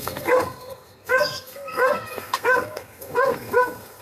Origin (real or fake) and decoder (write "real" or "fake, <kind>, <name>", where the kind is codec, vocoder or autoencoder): fake, codec, SNAC